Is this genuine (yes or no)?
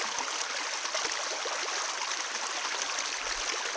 yes